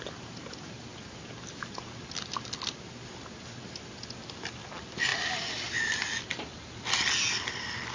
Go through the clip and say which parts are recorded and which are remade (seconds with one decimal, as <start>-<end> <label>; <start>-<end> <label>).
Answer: 0.0-7.9 recorded